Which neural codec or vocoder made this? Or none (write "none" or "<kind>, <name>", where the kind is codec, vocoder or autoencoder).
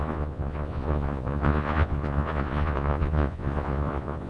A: vocoder, Vocos